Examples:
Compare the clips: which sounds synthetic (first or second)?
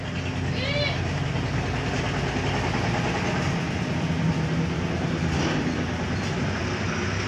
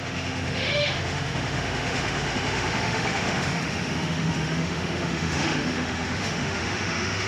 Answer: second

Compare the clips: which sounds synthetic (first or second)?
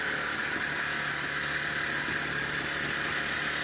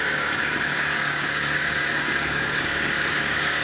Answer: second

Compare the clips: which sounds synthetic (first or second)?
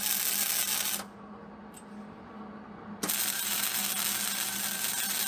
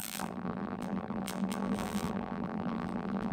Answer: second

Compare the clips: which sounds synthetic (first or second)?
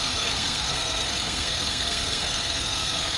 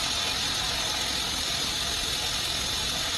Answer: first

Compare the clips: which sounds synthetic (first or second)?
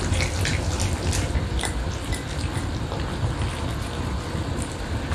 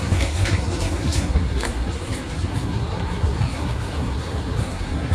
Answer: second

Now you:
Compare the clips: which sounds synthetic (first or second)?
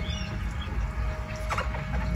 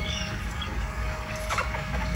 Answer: second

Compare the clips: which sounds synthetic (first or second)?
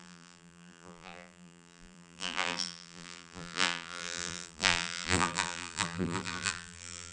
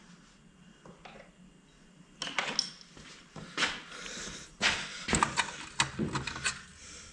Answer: first